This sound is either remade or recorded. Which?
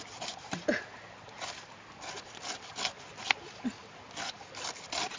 recorded